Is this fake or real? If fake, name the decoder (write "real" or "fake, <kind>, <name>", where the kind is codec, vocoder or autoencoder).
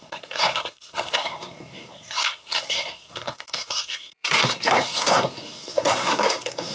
fake, codec, SNAC